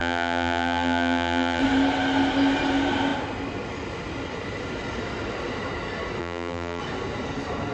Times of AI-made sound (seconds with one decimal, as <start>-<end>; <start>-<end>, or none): 0.0-1.6; 6.2-6.8